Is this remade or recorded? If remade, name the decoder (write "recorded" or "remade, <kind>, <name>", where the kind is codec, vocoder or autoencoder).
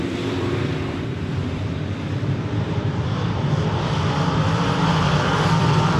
remade, vocoder, BigVGAN v2